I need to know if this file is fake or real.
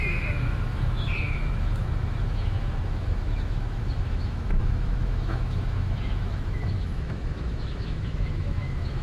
fake